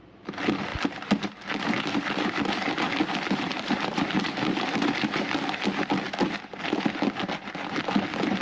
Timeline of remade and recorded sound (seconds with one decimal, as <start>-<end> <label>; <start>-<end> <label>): 0.0-8.4 recorded